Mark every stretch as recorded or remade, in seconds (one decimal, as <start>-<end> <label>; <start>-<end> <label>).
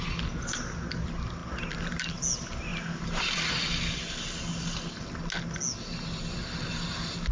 0.0-7.3 recorded